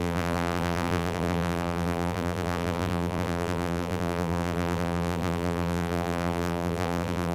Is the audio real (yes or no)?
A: no